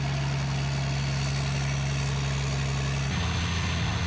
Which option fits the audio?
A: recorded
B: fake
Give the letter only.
A